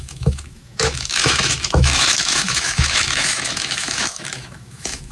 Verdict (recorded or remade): remade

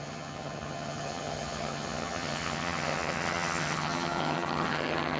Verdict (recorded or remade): remade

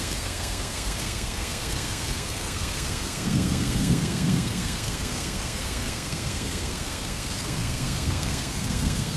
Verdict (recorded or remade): remade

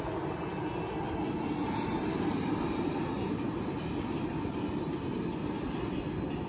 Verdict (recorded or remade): recorded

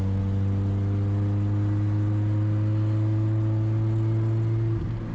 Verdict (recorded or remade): recorded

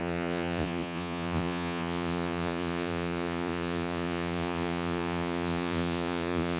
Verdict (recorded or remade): remade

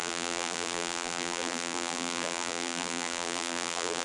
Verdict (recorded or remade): remade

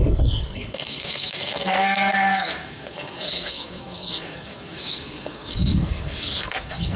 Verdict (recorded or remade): remade